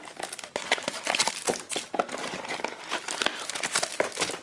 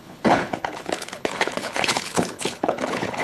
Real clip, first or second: first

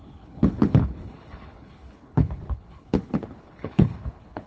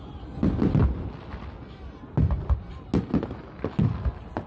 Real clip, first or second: second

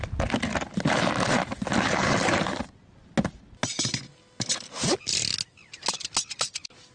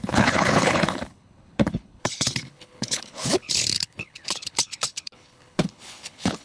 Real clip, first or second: first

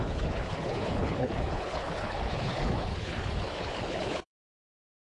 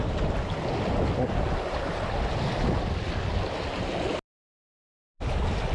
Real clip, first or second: second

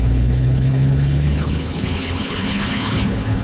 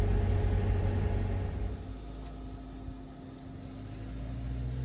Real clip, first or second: second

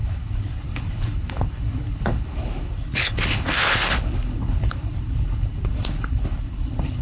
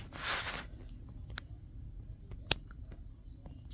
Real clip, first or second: second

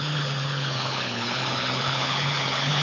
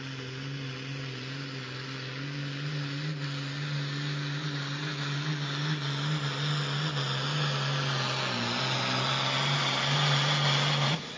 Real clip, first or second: second